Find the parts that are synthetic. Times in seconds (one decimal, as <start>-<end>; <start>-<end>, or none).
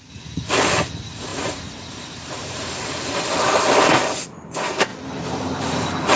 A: 1.3-2.7; 4.9-6.2